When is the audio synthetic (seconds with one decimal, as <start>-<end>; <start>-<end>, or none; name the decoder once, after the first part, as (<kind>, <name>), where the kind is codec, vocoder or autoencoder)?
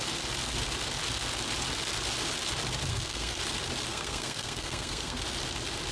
2.9-3.4 (codec, SNAC); 3.9-5.2